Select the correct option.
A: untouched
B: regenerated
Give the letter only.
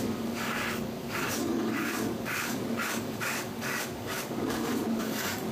B